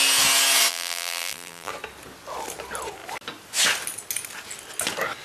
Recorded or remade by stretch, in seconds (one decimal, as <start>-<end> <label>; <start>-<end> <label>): 0.0-0.7 recorded; 0.7-1.7 remade; 1.7-5.2 recorded

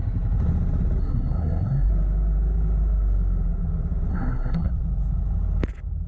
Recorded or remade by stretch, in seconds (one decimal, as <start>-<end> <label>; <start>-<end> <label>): 0.0-1.0 recorded; 1.0-1.9 remade; 1.9-4.1 recorded; 4.1-4.7 remade; 4.7-6.1 recorded